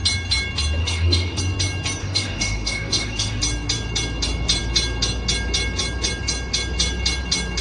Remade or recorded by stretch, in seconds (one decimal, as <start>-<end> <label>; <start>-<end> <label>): 0.0-0.8 recorded; 0.8-1.4 remade; 1.4-2.0 recorded; 2.0-3.4 remade; 3.4-7.6 recorded